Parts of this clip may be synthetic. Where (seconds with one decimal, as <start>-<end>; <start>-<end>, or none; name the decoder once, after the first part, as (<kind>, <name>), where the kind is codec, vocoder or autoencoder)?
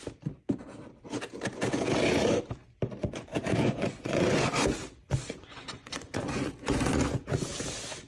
3.0-4.5 (vocoder, Vocos); 5.0-7.5